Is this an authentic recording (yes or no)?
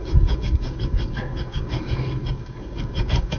no